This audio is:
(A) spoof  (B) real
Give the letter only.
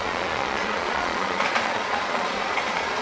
A